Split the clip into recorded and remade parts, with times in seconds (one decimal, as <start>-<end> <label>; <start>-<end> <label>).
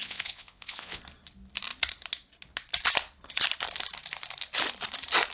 0.0-1.0 remade; 1.0-5.3 recorded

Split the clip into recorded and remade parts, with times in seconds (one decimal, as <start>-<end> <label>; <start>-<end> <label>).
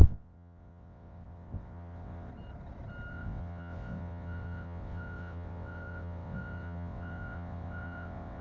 0.0-2.3 remade; 2.3-3.1 recorded; 3.1-8.4 remade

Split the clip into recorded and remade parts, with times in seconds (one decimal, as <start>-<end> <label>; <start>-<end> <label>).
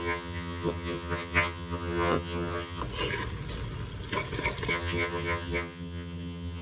0.0-2.8 remade; 2.8-4.7 recorded; 4.7-6.6 remade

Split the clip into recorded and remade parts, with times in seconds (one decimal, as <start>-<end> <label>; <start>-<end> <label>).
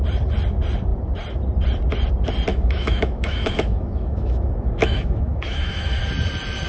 0.0-2.5 recorded; 2.5-6.1 remade; 6.1-6.7 recorded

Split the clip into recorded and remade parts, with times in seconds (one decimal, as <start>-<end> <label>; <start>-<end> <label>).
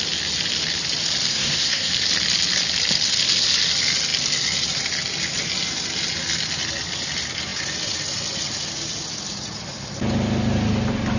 0.0-1.3 recorded; 1.3-1.9 remade; 1.9-11.2 recorded